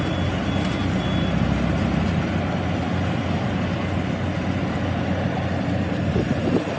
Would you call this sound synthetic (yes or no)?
no